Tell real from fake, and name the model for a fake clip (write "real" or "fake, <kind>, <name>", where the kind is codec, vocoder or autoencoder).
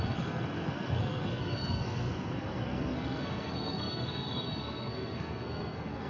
fake, codec, SNAC